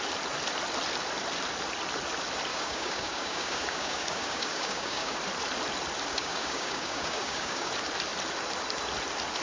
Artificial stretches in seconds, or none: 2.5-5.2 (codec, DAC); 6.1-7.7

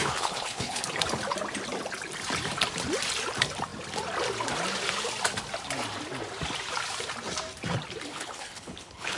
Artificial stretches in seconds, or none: 0.0-0.8 (codec, HILCodec); 8.1-9.2

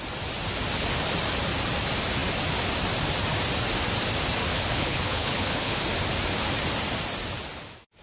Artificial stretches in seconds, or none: 4.5-5.8 (codec, HILCodec)

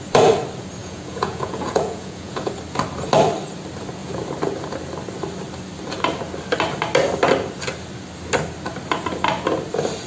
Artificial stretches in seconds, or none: 0.8-2.5 (vocoder, Vocos)

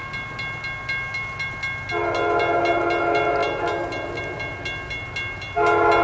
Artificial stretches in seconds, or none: none

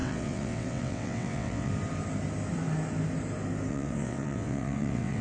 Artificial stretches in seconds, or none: 0.0-1.7 (vocoder, WaveNeXt); 3.7-5.2

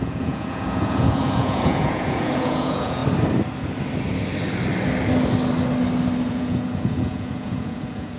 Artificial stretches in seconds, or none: 0.0-3.0 (vocoder, Vocos); 6.3-8.2